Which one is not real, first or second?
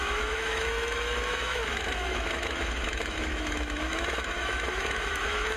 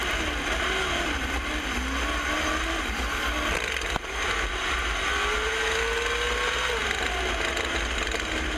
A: first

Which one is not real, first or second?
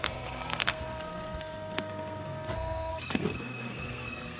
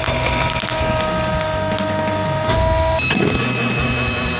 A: first